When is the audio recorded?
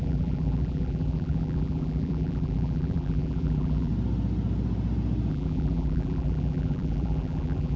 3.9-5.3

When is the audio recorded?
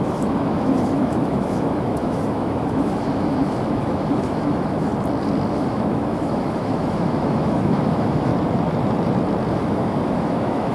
4.9-5.5; 8.3-9.5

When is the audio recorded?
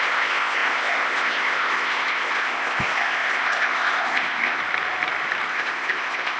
4.6-5.5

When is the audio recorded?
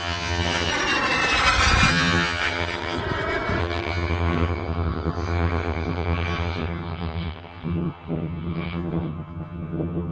0.7-1.9; 3.0-3.6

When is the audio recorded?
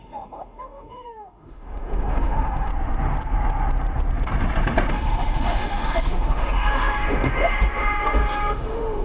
2.7-4.9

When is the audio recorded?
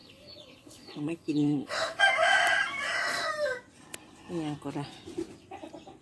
2.0-6.0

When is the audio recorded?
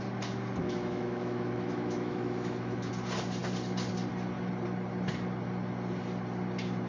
0.0-0.6; 2.9-6.9